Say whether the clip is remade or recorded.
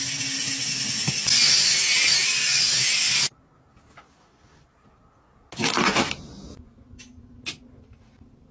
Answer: recorded